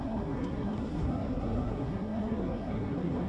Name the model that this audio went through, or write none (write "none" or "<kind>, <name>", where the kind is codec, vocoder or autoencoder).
codec, SNAC